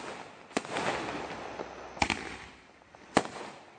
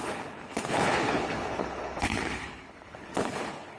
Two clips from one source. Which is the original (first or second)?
first